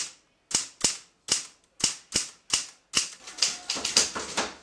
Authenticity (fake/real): real